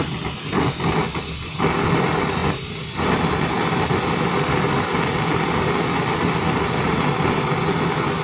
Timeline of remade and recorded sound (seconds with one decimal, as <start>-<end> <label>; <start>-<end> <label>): 0.0-8.2 recorded